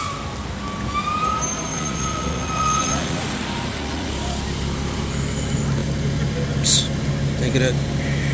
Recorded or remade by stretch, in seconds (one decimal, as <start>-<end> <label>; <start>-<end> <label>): 0.0-1.7 recorded; 1.7-4.1 remade; 4.1-8.3 recorded